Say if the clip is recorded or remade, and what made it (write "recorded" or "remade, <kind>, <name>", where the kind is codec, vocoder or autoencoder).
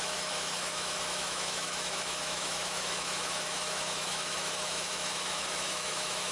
remade, autoencoder, DAC-VAE